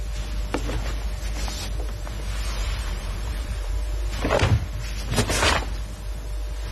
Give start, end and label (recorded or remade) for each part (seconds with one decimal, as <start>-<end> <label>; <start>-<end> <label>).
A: 0.0-2.6 recorded; 2.6-3.7 remade; 3.7-6.7 recorded